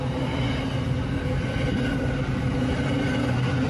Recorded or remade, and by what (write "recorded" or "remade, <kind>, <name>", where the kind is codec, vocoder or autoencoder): recorded